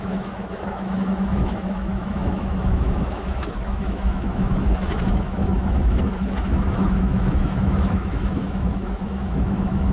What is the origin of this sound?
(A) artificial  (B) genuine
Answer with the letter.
A